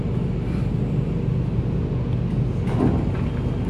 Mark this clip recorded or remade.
recorded